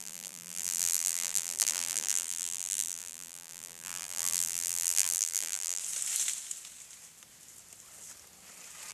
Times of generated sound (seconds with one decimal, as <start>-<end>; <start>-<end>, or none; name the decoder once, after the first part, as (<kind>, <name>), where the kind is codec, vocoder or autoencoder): 0.0-5.8 (vocoder, BigVGAN v2)